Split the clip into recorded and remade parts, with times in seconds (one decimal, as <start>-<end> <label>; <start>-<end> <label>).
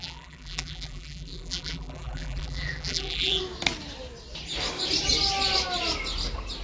0.0-3.4 remade; 3.4-6.6 recorded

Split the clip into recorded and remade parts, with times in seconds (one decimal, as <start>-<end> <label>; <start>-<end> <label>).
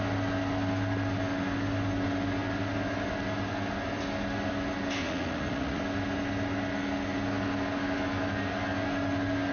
0.0-5.0 recorded; 5.0-5.8 remade; 5.8-9.5 recorded